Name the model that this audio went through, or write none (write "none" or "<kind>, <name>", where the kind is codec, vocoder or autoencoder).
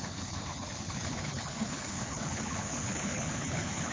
codec, HILCodec